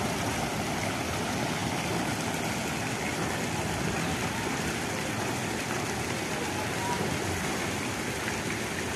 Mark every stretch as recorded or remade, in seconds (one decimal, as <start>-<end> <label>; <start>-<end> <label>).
0.0-9.0 recorded